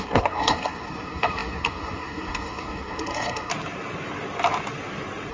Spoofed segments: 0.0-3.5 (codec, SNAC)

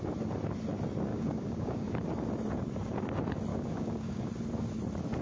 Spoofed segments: 1.1-2.0 (codec, DAC); 3.5-4.3

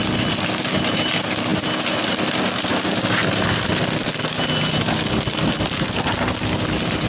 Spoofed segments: none

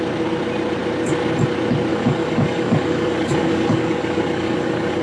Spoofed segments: 1.9-5.0 (codec, DAC)

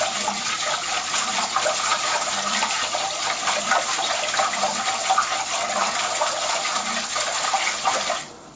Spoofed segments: none

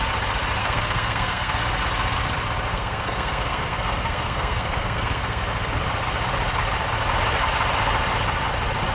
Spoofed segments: 0.6-1.6 (codec, SNAC); 2.7-5.4

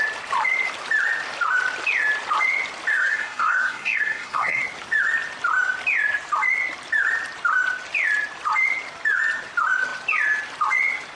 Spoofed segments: 2.9-4.6 (codec, SNAC)

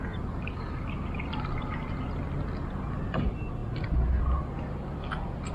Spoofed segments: none